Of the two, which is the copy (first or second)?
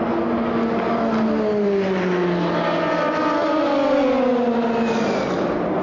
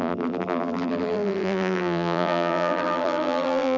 second